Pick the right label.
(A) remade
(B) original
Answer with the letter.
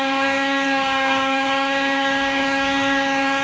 A